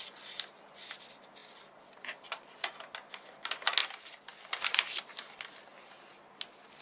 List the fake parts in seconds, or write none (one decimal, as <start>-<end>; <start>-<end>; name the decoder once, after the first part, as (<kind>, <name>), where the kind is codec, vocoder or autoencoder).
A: none